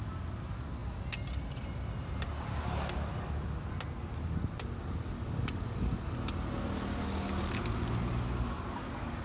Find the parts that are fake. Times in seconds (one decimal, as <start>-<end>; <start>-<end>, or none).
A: none